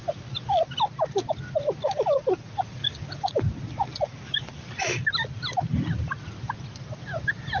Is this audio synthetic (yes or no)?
no